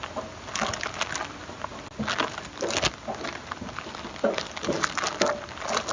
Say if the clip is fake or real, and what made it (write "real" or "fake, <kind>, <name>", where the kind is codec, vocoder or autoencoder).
real